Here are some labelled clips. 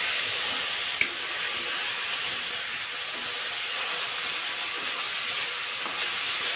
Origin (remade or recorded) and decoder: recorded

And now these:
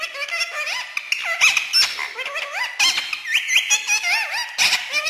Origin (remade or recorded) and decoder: recorded